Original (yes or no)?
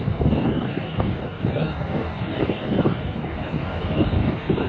no